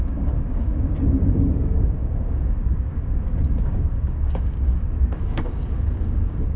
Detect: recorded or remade remade